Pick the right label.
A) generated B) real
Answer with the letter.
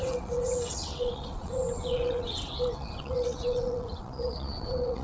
A